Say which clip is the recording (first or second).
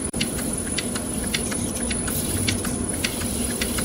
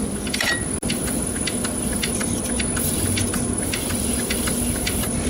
second